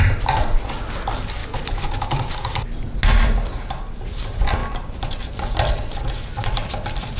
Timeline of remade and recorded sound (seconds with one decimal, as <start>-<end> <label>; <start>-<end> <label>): 0.0-7.2 recorded

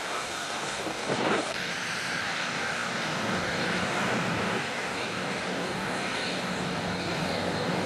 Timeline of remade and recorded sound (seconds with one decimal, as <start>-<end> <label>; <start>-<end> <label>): 0.0-1.7 remade; 1.7-2.2 recorded; 2.2-7.9 remade